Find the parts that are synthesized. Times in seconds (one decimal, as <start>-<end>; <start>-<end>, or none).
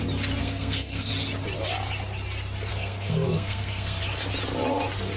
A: 0.4-1.1; 2.7-4.0